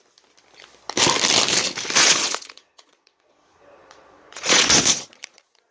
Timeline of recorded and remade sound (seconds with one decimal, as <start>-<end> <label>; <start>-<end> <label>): 0.0-2.0 recorded; 2.0-5.7 remade